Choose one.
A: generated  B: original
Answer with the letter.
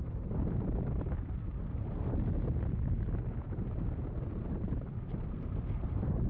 B